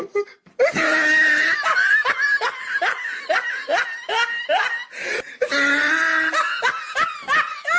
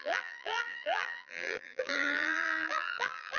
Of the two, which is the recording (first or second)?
first